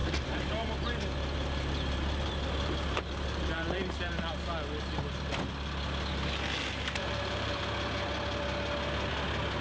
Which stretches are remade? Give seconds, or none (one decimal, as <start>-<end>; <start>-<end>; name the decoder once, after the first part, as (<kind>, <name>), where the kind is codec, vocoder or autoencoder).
0.0-4.0 (vocoder, BigVGAN v2); 7.0-7.6